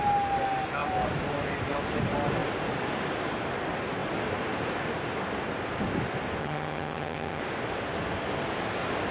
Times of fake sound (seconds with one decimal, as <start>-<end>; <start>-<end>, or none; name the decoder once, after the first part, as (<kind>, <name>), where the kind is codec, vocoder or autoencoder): 6.4-7.4 (vocoder, HiFi-GAN)